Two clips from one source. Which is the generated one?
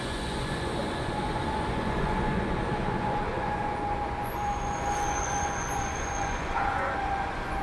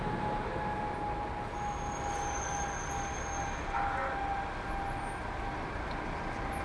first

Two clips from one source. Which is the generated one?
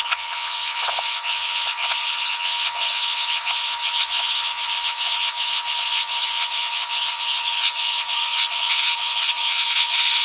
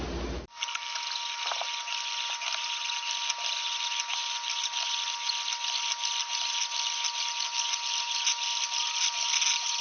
first